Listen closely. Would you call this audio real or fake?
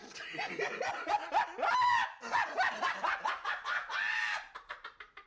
fake